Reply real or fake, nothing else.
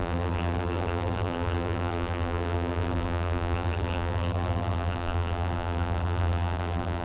fake